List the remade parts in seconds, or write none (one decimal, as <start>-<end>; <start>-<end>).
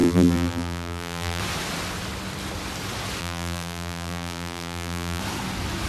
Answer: 0.0-1.4; 3.2-5.2